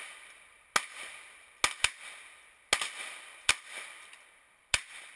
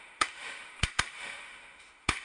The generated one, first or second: second